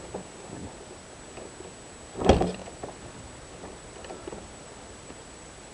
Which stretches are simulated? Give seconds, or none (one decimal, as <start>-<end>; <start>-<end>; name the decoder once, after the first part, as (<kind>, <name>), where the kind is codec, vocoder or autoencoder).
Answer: 0.6-1.2 (vocoder, BigVGAN v2); 2.6-5.7